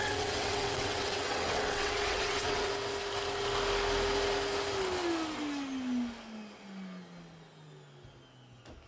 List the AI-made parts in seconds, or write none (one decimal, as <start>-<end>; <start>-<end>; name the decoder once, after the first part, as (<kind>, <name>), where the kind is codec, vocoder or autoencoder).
0.0-2.7 (vocoder, WaveNeXt)